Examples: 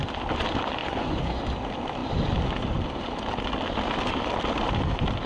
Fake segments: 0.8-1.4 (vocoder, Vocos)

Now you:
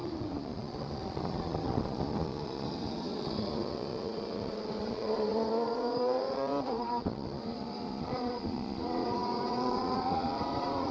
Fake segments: 0.0-10.9 (vocoder, Vocos)

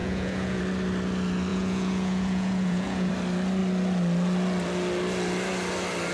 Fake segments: 0.0-0.6 (vocoder, Vocos); 1.5-3.1

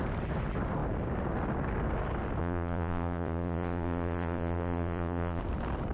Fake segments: 2.4-5.4 (vocoder, Vocos)

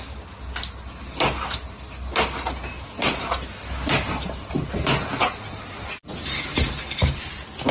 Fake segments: none

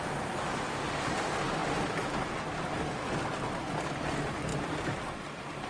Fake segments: none